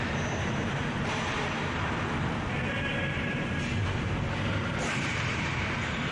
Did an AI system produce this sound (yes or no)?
yes